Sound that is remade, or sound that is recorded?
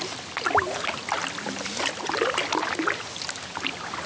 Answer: recorded